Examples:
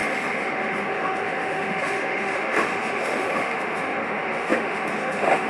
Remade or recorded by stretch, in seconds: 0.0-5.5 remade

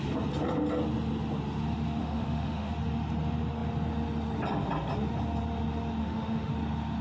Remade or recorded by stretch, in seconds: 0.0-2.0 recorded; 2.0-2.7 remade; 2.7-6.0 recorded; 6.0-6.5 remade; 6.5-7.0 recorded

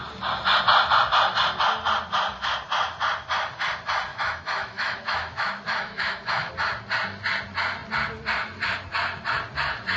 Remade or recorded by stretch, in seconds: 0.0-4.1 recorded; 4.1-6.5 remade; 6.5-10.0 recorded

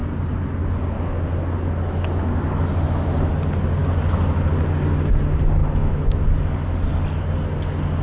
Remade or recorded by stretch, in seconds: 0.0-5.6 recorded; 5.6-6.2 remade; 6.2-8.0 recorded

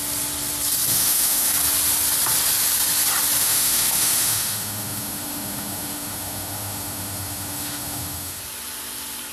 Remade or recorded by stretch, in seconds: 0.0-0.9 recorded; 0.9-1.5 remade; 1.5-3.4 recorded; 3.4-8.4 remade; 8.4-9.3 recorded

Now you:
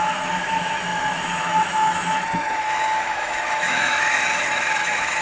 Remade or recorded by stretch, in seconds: 0.0-5.2 remade

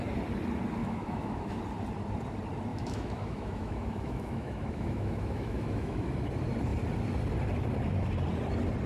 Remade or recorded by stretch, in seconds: 0.0-0.8 recorded; 0.8-1.6 remade; 1.6-2.7 recorded; 2.7-6.1 remade; 6.1-8.9 recorded

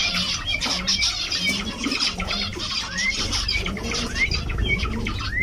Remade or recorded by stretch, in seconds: 0.0-5.4 recorded